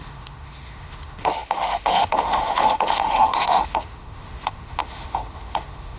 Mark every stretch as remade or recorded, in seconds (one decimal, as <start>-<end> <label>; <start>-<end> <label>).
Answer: 0.0-6.0 remade